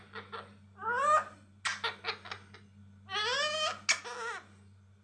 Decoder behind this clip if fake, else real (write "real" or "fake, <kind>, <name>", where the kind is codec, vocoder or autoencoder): real